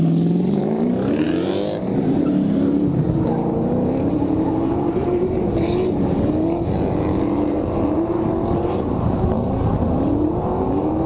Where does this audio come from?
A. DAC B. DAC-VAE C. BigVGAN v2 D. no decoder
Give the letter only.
C